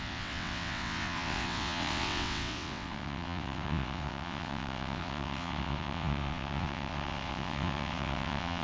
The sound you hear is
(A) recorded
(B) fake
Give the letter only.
B